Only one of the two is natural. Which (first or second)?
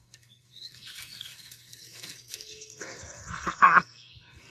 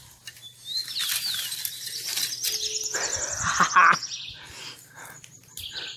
second